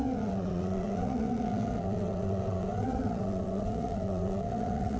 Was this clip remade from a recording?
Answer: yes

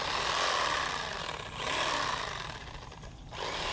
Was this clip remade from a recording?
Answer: no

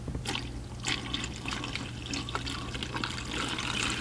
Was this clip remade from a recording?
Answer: no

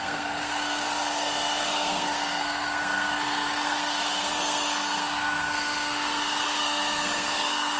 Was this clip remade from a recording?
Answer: yes